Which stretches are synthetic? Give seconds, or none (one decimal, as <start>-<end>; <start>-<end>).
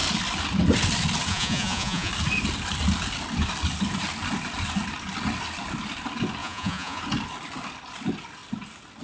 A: 1.3-2.1; 6.4-7.0